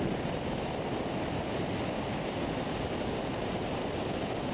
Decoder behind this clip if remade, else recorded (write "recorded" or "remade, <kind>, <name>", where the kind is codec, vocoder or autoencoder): recorded